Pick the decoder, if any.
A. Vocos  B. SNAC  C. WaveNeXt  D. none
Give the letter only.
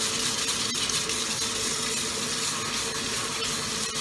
D